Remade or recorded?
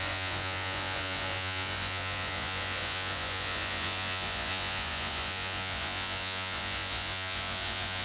remade